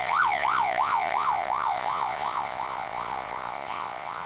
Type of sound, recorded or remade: remade